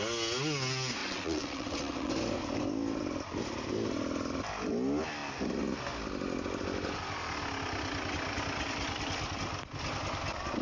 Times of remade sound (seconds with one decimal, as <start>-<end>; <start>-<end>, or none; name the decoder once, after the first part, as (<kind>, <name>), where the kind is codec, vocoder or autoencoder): 1.0-2.1 (vocoder, WaveNeXt)